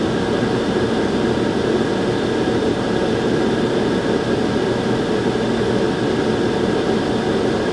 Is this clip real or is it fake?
real